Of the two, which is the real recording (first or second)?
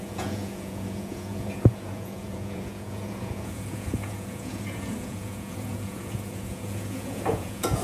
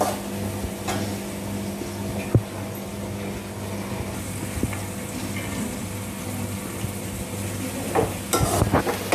second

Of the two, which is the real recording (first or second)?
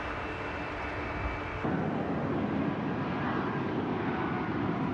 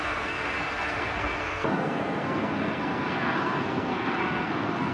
first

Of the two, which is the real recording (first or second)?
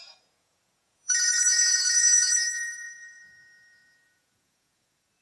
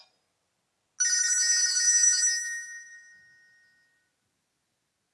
second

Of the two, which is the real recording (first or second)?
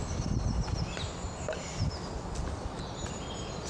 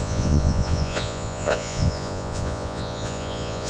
first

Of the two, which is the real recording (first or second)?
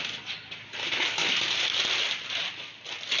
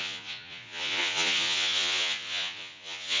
first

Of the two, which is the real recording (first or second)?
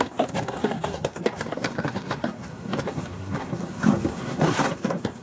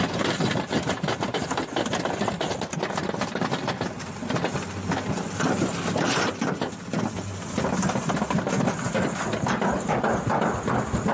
second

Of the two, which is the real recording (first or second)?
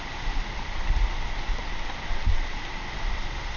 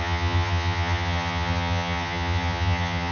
first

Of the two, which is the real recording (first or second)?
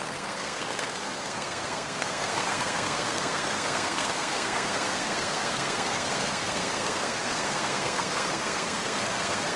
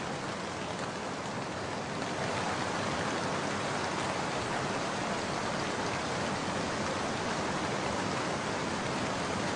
second